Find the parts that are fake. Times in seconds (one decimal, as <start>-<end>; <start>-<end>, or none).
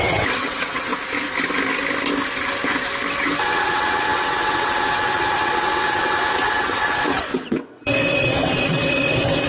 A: 0.0-0.9; 3.1-9.5